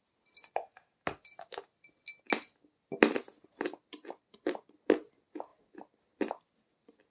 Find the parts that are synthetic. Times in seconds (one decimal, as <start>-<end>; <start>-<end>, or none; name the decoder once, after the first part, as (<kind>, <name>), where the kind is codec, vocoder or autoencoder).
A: none